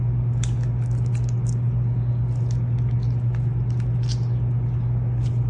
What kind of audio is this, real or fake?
real